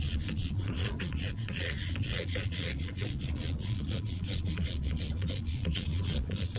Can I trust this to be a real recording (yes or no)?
no